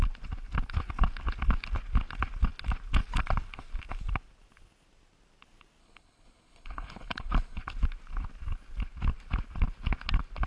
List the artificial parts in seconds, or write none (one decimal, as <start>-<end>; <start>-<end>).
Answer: 5.8-7.6